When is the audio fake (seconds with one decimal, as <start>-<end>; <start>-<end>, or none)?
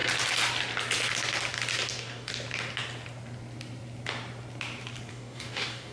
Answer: 1.9-2.3; 5.1-5.9